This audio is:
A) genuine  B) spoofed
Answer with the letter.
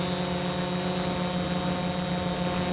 A